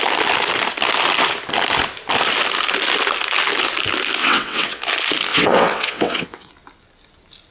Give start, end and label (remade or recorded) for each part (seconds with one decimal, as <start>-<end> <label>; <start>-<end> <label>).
0.0-4.2 recorded; 4.2-4.8 remade; 4.8-5.3 recorded; 5.3-6.5 remade; 6.5-7.5 recorded